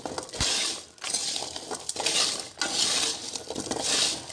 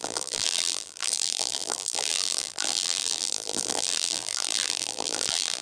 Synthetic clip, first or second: second